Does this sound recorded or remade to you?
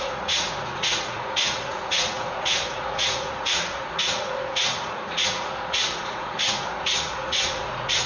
remade